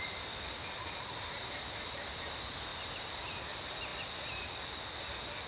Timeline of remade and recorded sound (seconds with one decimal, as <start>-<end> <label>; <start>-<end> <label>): 0.0-2.7 recorded; 2.7-3.3 remade; 3.3-3.9 recorded; 3.9-4.8 remade; 4.8-5.5 recorded